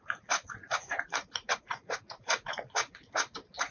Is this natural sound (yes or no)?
no